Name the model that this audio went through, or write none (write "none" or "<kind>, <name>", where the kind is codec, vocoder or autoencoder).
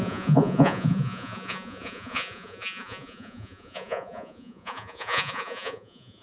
vocoder, Vocos